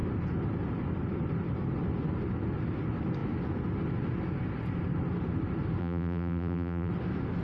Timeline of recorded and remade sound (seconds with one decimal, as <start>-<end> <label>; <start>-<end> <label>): 0.0-5.8 recorded; 5.8-6.9 remade; 6.9-7.4 recorded